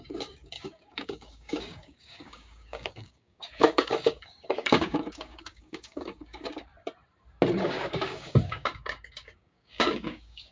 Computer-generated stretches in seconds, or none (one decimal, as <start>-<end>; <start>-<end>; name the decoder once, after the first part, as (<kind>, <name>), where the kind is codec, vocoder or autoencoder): 0.0-6.7 (codec, DAC); 7.6-10.5